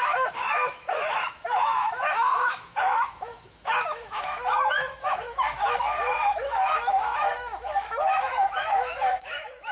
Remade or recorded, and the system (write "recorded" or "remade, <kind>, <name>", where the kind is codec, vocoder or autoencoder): remade, autoencoder, DAC-VAE